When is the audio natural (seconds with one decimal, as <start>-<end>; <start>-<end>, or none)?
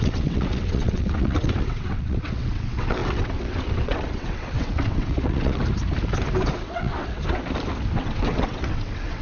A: 5.6-6.5; 7.2-8.0